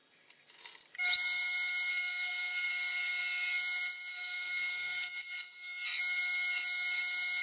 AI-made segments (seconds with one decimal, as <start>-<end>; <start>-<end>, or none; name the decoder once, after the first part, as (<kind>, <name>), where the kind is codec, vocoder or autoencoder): 1.9-2.7 (codec, SNAC); 4.1-6.0